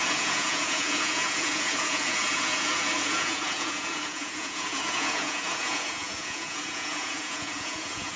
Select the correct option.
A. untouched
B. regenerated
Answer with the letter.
B